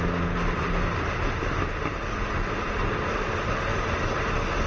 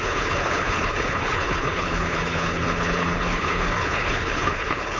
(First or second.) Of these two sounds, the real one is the first